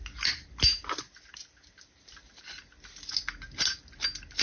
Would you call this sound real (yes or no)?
yes